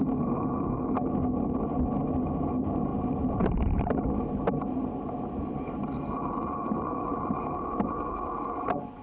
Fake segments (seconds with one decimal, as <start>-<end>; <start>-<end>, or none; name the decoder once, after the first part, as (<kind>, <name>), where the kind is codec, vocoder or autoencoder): 2.9-3.8 (vocoder, BigVGAN v2)